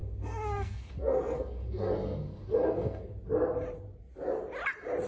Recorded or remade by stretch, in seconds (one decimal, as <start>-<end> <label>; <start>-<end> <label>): 0.0-3.1 remade; 3.1-5.1 recorded